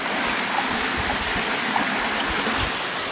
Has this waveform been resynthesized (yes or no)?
no